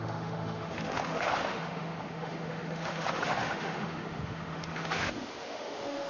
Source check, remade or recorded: remade